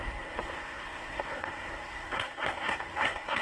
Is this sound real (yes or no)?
no